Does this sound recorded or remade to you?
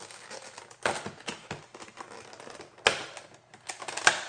recorded